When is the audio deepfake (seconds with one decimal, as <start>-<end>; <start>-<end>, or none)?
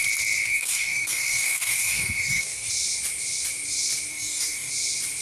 0.5-2.7; 4.1-4.7